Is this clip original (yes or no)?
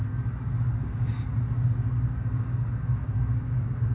no